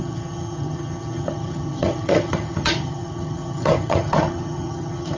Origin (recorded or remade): remade